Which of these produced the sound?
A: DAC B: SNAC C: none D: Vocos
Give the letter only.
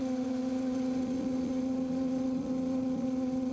D